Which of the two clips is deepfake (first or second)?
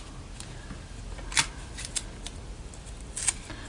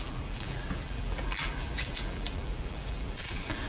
second